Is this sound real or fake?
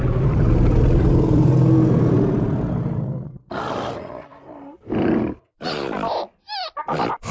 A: fake